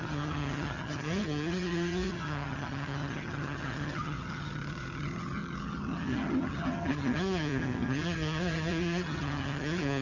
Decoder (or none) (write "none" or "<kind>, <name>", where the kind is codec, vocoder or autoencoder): vocoder, HiFi-GAN